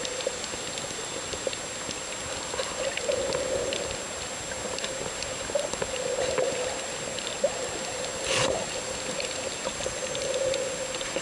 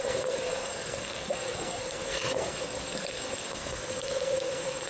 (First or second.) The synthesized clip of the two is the second